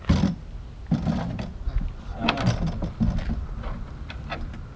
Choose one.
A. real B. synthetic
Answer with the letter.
A